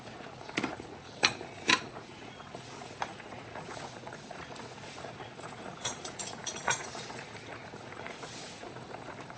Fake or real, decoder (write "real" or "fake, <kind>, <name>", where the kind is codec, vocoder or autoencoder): fake, vocoder, Vocos